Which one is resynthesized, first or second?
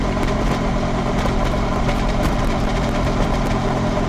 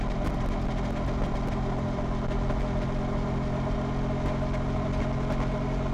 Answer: first